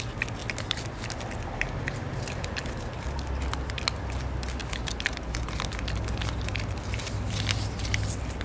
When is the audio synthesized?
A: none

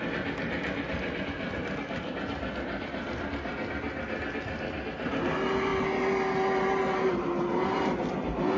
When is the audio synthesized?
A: none

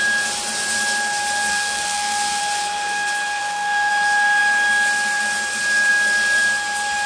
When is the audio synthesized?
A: 1.5-2.4 (codec, SNAC); 3.4-3.9

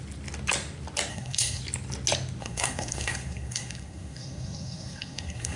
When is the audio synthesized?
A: 1.1-1.6 (codec, SNAC); 2.4-5.6

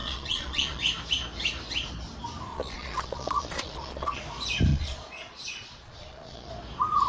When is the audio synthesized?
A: 0.0-0.8 (vocoder, Vocos); 2.5-4.2; 4.7-6.5

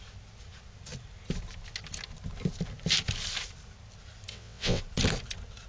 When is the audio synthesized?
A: 4.3-4.8 (vocoder, WaveNeXt)